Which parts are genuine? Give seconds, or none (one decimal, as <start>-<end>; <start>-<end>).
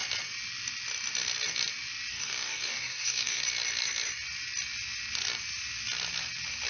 0.0-2.1; 3.4-6.7